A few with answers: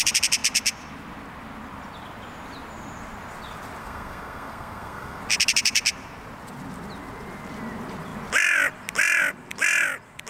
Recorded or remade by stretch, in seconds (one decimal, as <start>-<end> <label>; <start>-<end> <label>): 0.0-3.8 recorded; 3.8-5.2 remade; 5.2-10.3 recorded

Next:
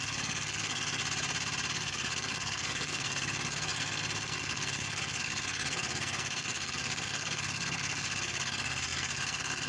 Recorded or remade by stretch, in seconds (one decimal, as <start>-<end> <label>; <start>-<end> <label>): 0.0-1.0 remade; 1.0-1.7 recorded; 1.7-9.7 remade

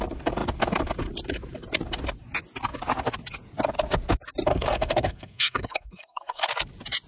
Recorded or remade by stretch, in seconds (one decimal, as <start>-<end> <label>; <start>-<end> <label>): 0.0-4.5 recorded; 4.5-6.4 remade; 6.4-7.1 recorded

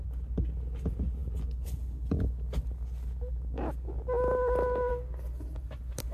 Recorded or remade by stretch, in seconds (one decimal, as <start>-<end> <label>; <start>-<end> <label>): 0.0-6.1 recorded